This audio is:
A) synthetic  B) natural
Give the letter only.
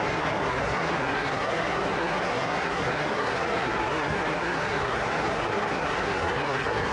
A